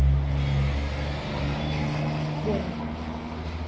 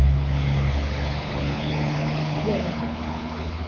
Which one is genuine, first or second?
first